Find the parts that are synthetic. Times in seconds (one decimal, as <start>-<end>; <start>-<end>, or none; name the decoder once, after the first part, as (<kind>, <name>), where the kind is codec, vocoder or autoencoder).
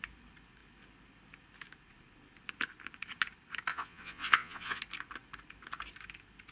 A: 3.7-4.8 (vocoder, Vocos)